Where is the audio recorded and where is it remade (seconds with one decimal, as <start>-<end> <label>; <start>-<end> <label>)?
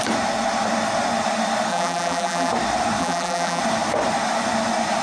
0.0-1.7 recorded; 1.7-2.5 remade; 2.5-3.0 recorded; 3.0-3.6 remade; 3.6-5.0 recorded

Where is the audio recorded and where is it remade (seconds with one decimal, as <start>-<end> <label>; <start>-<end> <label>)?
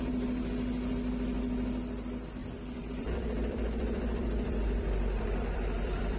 0.0-2.4 recorded; 2.4-6.2 remade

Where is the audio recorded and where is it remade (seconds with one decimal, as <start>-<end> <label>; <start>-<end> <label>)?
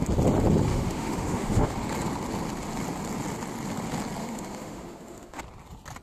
0.0-0.7 recorded; 0.7-1.7 remade; 1.7-4.2 recorded; 4.2-5.4 remade; 5.4-6.0 recorded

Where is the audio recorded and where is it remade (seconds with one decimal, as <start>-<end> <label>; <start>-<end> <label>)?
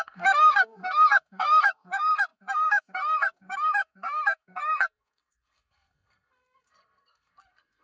0.0-7.8 remade